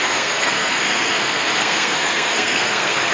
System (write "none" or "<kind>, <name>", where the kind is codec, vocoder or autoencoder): codec, SNAC